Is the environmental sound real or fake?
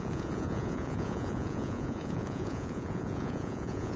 fake